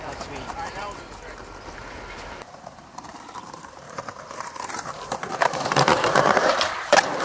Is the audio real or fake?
fake